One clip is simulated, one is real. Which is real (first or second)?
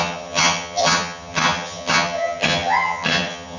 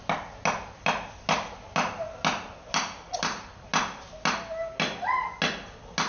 second